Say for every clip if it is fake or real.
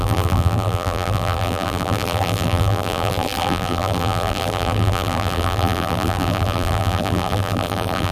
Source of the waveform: fake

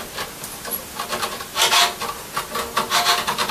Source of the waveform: real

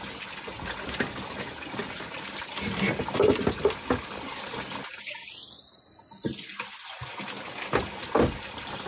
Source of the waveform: real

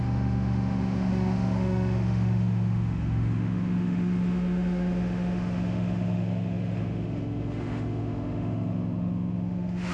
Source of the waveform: fake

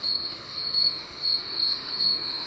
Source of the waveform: fake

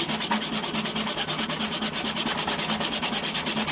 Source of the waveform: real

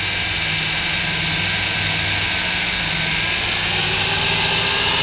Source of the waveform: real